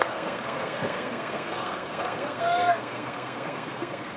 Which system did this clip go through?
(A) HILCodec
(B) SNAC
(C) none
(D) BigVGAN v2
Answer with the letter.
B